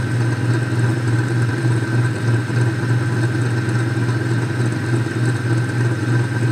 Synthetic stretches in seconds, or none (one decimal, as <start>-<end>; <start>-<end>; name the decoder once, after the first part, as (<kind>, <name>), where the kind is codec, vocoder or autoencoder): 0.9-2.5 (vocoder, BigVGAN v2)